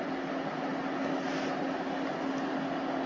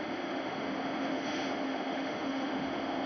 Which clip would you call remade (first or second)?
second